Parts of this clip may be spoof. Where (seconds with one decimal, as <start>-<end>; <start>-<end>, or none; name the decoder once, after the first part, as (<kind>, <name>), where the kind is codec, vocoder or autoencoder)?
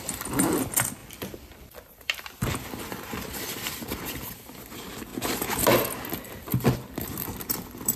0.0-5.1 (vocoder, BigVGAN v2); 6.1-8.0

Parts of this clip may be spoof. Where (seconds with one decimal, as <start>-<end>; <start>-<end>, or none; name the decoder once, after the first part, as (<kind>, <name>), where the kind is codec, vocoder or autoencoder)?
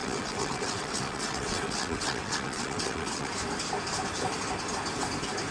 0.0-3.3 (vocoder, WaveNeXt)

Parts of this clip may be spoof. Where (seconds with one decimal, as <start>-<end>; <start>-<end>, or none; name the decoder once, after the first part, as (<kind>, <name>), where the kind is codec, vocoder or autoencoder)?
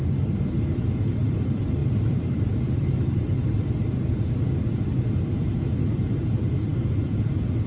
1.8-4.5 (vocoder, BigVGAN v2)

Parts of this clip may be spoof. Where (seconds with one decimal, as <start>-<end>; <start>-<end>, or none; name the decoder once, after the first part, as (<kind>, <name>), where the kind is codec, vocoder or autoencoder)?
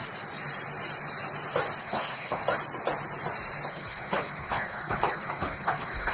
1.8-2.4 (codec, HILCodec); 3.7-6.1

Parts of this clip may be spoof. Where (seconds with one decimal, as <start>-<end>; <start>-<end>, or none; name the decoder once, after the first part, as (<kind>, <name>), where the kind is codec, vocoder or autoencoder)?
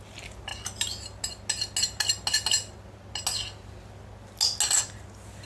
none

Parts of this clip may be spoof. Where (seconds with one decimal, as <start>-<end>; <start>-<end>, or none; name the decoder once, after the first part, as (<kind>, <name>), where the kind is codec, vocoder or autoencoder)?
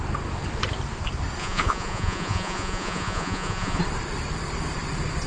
1.4-3.8 (vocoder, Vocos)